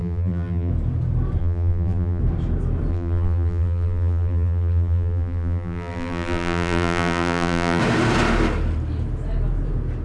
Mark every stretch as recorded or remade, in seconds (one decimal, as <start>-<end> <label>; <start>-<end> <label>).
0.0-0.7 remade; 0.7-1.4 recorded; 1.4-2.2 remade; 2.2-2.9 recorded; 2.9-7.8 remade; 7.8-10.0 recorded